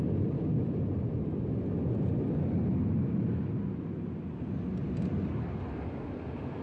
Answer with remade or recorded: recorded